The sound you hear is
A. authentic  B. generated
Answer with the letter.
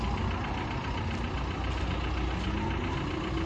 A